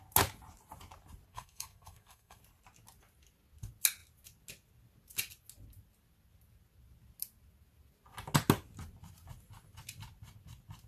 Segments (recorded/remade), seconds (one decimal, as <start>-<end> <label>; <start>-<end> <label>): 0.0-1.3 recorded; 1.3-2.4 remade; 2.4-10.9 recorded